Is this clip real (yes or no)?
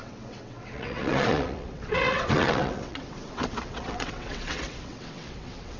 no